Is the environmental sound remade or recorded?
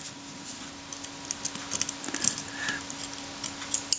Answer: recorded